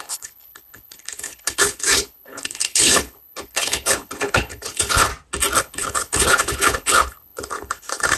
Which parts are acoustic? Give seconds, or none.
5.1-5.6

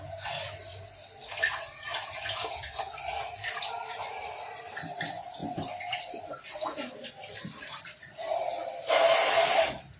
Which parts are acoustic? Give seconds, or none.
0.0-5.4; 9.3-10.0